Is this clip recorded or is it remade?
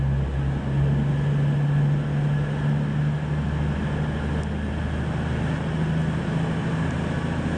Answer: recorded